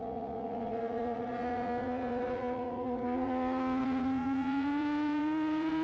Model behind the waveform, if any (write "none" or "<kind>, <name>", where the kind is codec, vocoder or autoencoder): vocoder, Vocos